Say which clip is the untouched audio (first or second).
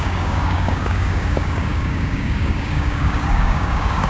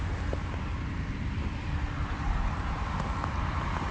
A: second